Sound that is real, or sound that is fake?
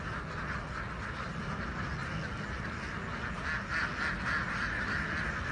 real